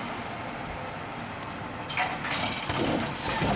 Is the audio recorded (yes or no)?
yes